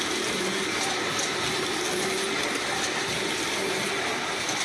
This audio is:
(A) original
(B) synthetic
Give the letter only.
A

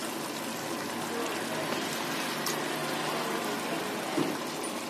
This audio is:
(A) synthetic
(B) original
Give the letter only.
B